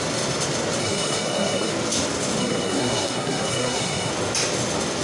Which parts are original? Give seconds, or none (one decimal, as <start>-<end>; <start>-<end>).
0.0-0.8; 1.7-2.4; 4.1-5.0